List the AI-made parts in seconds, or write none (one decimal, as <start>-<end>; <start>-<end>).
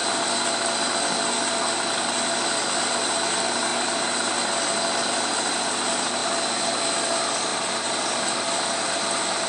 0.0-1.0; 6.2-6.7; 7.5-9.0